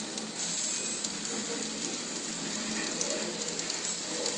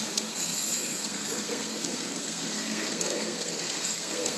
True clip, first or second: first